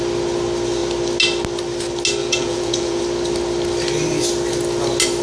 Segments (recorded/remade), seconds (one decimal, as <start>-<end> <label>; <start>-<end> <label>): 0.0-2.2 recorded; 2.2-3.0 remade; 3.0-5.2 recorded